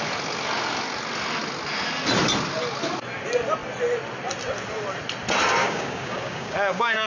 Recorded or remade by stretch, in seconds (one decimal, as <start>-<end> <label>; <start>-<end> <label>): 0.0-5.6 recorded; 5.6-7.1 remade